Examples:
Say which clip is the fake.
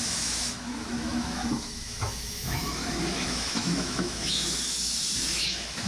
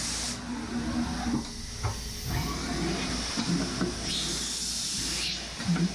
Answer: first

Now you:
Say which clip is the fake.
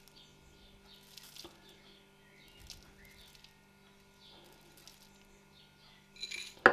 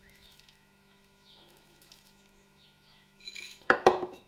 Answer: second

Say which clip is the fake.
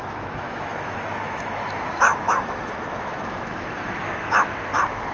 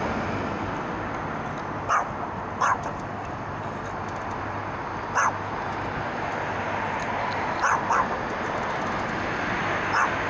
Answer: first